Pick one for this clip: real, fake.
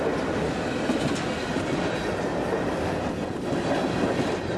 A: real